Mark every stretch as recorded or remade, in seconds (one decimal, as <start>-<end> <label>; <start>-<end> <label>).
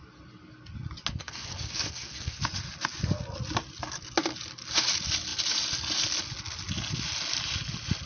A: 0.0-1.1 recorded; 1.1-2.4 remade; 2.4-8.1 recorded